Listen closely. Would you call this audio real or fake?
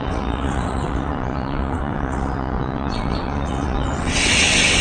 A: fake